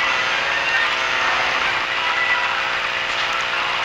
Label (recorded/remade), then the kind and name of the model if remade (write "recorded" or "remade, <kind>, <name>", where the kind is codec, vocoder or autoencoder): recorded